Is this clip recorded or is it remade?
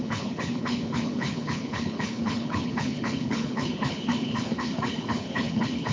remade